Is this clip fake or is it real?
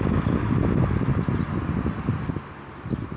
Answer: real